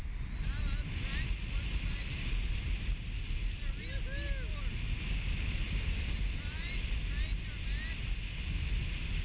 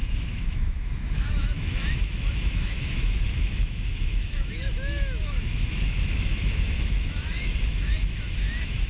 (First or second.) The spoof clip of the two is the second